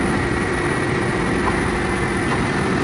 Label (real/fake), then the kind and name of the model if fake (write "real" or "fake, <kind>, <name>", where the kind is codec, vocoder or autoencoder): real